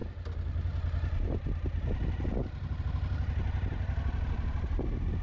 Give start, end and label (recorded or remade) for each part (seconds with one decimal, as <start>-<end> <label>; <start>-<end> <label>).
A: 0.0-5.2 recorded